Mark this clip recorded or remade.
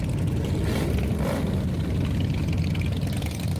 recorded